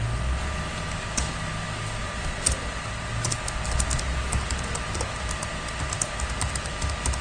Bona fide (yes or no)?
yes